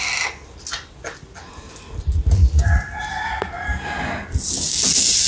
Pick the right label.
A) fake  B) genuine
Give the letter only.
B